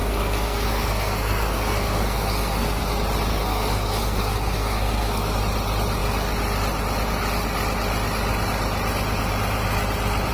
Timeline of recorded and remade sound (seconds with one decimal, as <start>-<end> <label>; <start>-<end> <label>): 0.0-2.9 remade; 2.9-3.3 recorded; 3.3-5.4 remade; 5.4-10.3 recorded